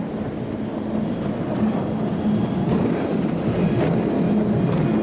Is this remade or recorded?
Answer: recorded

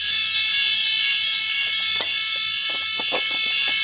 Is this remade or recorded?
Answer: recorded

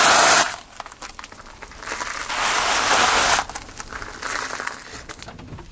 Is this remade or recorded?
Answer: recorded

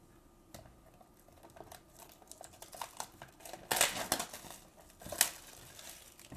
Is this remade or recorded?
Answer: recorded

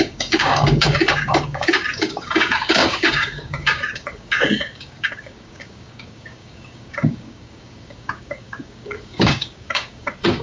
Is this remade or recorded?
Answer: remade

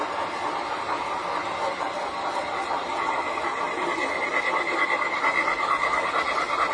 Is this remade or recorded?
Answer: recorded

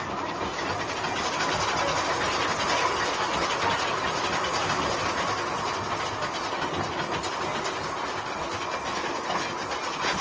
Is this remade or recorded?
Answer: recorded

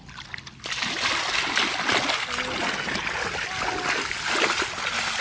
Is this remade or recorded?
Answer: recorded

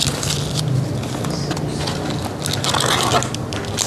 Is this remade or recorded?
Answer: recorded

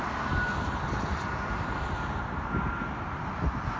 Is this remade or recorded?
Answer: recorded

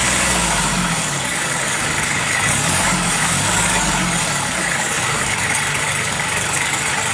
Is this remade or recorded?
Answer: remade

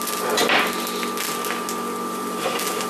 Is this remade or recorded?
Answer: recorded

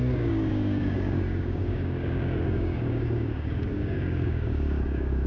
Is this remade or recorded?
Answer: remade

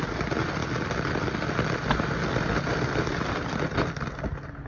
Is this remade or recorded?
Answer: recorded